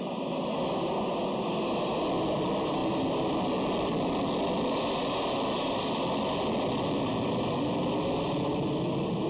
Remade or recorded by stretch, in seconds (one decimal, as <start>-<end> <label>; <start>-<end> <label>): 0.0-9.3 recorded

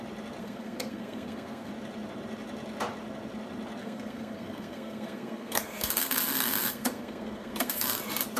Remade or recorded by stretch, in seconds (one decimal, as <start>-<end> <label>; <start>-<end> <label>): 0.0-0.4 recorded; 0.4-1.7 remade; 1.7-3.8 recorded; 3.8-8.0 remade; 8.0-8.4 recorded

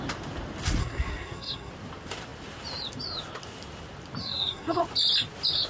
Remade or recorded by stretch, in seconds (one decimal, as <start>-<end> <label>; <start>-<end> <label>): 0.0-0.8 recorded; 0.8-1.7 remade; 1.7-4.2 recorded; 4.2-4.8 remade; 4.8-5.7 recorded

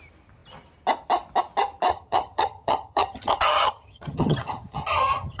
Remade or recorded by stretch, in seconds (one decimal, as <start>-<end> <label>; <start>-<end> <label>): 0.0-1.9 recorded; 1.9-5.4 remade